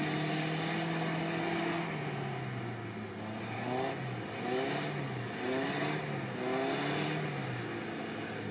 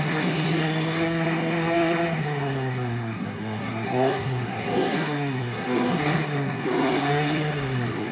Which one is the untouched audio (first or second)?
first